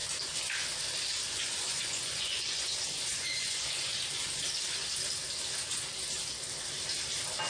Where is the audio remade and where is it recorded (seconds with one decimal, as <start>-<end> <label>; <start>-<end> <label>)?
0.0-1.3 recorded; 1.3-3.9 remade; 3.9-7.5 recorded